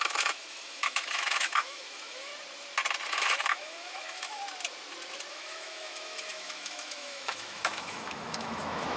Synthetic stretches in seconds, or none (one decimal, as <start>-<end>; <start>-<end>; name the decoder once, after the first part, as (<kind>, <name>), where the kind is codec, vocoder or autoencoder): 0.0-2.3 (autoencoder, DAC-VAE); 3.1-4.4; 5.3-9.0

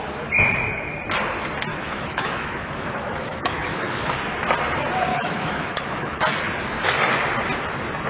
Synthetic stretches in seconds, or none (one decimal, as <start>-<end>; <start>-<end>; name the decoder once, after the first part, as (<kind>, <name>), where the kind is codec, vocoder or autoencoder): 1.7-4.1 (autoencoder, DAC-VAE); 5.1-6.2

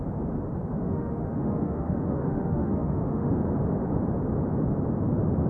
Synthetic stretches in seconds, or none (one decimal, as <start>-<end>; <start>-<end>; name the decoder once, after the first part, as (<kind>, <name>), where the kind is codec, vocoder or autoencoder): 0.7-3.3 (autoencoder, DAC-VAE)

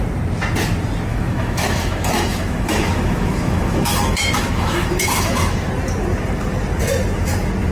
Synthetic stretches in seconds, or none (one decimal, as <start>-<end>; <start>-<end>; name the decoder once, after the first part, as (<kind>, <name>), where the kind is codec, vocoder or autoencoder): 1.1-5.7 (autoencoder, DAC-VAE)

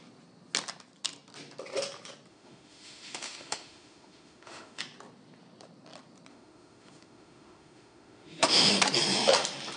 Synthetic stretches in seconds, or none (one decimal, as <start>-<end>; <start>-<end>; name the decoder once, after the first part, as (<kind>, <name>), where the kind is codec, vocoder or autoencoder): 2.3-4.8 (autoencoder, DAC-VAE); 6.3-8.7

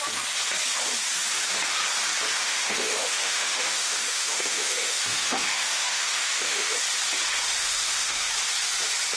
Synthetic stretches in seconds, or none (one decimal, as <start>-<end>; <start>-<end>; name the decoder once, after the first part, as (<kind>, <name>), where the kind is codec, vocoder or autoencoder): 2.3-6.7 (autoencoder, DAC-VAE); 7.6-8.3